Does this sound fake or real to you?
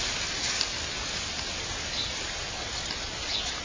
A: fake